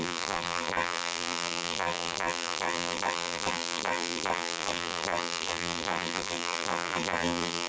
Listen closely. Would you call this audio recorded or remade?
remade